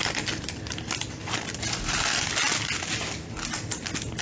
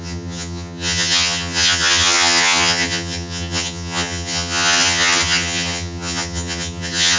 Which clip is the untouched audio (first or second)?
first